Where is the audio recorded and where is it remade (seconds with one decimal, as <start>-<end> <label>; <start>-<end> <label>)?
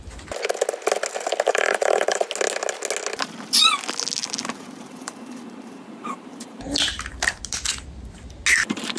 0.0-1.5 recorded; 1.5-2.2 remade; 2.2-4.2 recorded; 4.2-6.7 remade; 6.7-9.0 recorded